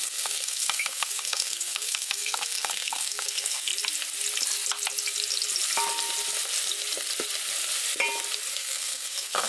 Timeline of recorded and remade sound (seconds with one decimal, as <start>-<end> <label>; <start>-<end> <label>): 0.0-3.7 remade; 3.7-8.5 recorded; 8.5-9.5 remade

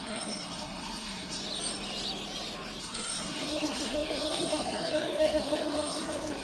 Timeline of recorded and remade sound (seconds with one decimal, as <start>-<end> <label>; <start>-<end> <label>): 0.0-1.4 remade; 1.4-2.8 recorded; 2.8-6.4 remade

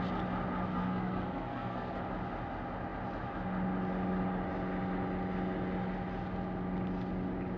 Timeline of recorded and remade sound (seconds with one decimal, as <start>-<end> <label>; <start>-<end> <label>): 0.0-0.7 recorded; 0.7-2.0 remade; 2.0-7.6 recorded

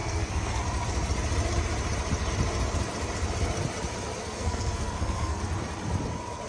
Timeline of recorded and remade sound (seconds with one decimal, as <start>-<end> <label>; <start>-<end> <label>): 0.0-0.6 remade; 0.6-4.2 recorded; 4.2-5.4 remade; 5.4-6.5 recorded